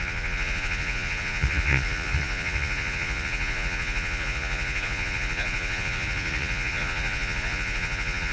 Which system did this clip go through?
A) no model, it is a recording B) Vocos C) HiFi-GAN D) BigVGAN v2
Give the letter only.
B